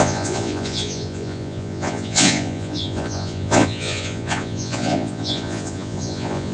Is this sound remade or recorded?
remade